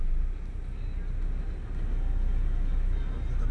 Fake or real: real